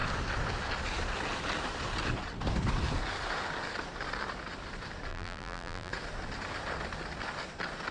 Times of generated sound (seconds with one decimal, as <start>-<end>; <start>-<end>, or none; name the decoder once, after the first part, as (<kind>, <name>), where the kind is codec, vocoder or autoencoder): 5.1-5.9 (vocoder, BigVGAN v2)